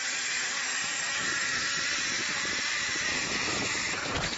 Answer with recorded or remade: remade